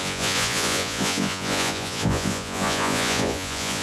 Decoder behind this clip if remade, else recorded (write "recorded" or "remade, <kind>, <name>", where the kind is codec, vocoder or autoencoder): remade, vocoder, Vocos